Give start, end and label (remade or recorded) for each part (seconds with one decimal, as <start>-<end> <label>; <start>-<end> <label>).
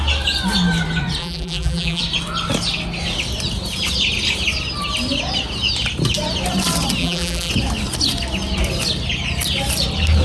0.0-1.2 recorded; 1.2-2.0 remade; 2.0-7.0 recorded; 7.0-7.5 remade; 7.5-10.2 recorded